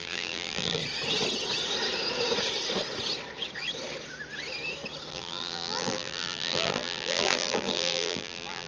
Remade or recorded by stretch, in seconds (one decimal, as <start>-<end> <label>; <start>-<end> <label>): 0.0-0.8 remade; 0.8-5.1 recorded; 5.1-8.7 remade